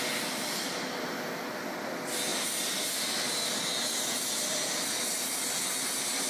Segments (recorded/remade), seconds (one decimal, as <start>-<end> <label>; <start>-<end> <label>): 0.0-6.3 recorded